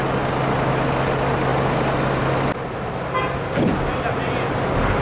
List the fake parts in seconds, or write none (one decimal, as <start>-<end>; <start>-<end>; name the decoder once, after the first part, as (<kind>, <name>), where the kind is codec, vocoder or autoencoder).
none